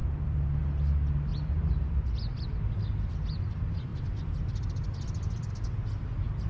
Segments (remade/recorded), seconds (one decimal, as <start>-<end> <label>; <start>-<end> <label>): 0.0-0.6 remade; 0.6-1.3 recorded; 1.3-2.0 remade; 2.0-6.5 recorded